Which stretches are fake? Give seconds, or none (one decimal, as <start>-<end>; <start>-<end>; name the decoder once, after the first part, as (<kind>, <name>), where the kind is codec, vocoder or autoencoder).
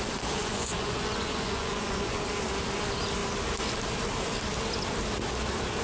0.4-2.2 (vocoder, Vocos)